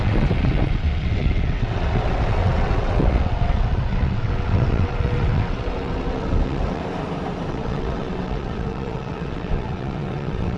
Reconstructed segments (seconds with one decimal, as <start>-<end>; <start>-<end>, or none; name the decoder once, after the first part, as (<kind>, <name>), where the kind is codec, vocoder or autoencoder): 0.0-6.8 (vocoder, WaveNeXt); 7.5-10.6